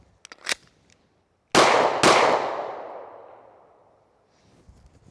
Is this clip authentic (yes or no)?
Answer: yes